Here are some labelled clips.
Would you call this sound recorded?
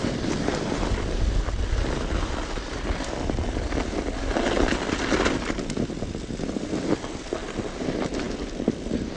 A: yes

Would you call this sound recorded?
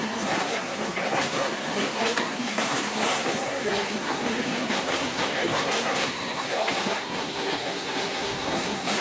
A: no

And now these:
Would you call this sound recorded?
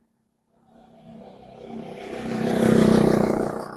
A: no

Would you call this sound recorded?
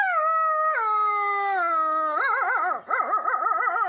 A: yes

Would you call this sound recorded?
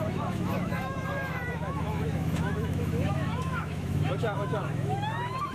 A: no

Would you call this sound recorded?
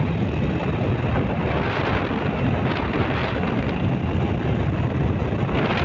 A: yes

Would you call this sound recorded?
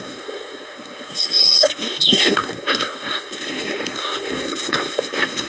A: no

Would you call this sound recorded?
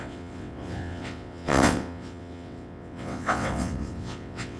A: no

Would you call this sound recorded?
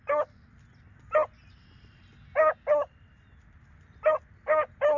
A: yes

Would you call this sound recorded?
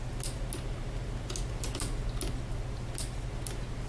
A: yes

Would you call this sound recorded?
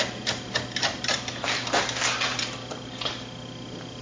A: yes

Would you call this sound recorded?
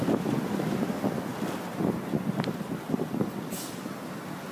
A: yes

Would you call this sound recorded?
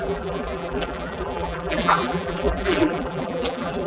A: no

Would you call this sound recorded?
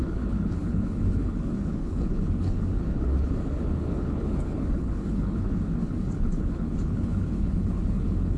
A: no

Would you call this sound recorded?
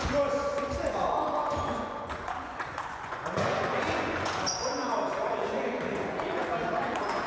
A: no